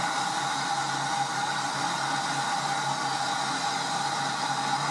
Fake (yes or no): no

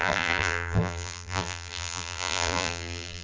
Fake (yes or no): yes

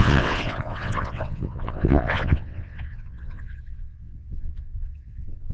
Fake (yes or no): yes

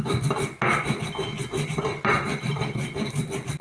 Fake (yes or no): no